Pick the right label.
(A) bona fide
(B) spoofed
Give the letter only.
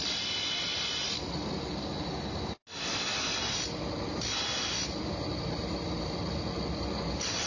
A